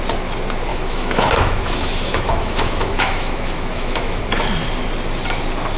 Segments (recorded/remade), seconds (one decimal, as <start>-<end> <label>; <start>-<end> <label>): 0.0-0.7 recorded; 0.7-4.2 remade; 4.2-5.8 recorded